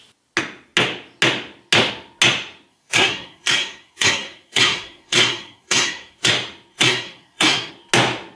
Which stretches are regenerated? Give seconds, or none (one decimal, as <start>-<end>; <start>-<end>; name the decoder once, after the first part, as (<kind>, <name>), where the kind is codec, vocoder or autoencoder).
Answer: 2.7-6.3 (codec, SNAC); 6.7-7.7